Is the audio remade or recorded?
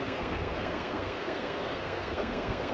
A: remade